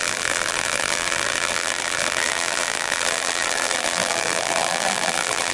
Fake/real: fake